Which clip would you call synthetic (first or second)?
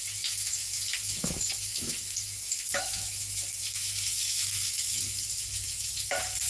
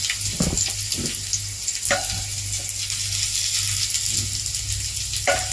first